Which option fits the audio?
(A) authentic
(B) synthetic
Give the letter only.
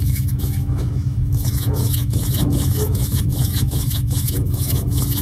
B